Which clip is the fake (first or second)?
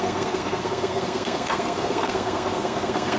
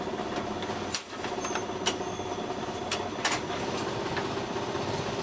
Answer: first